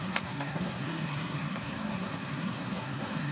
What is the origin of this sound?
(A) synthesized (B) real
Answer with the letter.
A